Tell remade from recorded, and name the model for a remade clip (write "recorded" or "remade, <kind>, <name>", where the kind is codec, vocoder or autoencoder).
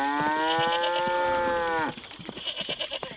recorded